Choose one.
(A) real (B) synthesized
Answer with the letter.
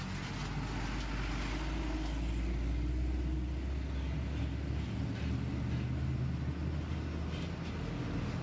A